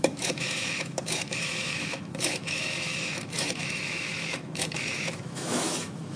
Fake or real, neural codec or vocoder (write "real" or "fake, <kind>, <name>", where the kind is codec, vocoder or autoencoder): fake, autoencoder, DAC-VAE